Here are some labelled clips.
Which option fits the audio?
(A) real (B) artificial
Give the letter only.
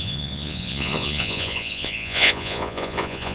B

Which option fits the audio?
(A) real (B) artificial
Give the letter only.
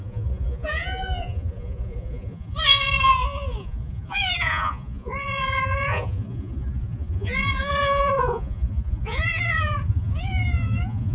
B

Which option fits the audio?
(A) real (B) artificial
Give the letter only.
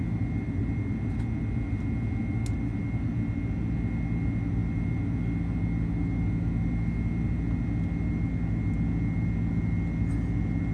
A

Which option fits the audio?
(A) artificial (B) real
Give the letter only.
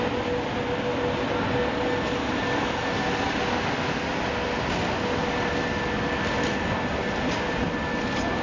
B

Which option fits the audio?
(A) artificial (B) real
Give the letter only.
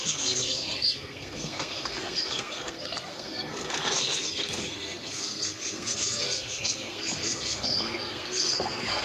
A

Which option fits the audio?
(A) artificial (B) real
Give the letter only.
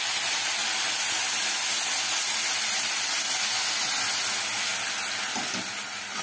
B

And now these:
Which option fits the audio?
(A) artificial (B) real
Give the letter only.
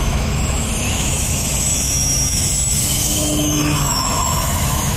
A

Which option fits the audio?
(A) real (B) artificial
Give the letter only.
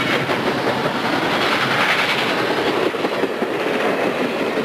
A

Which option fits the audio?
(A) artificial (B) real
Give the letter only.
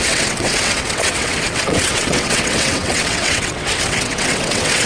A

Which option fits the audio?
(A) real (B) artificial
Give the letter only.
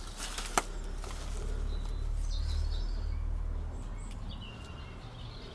A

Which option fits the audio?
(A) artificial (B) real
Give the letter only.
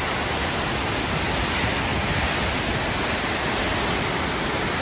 B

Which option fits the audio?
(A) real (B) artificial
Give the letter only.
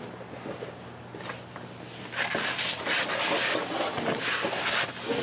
A